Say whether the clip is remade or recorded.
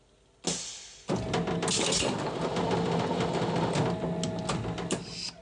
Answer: recorded